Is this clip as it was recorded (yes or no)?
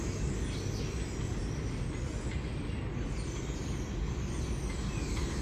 yes